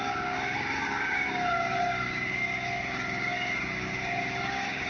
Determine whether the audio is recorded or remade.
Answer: remade